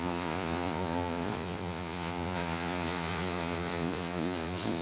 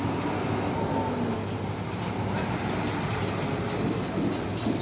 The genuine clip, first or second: second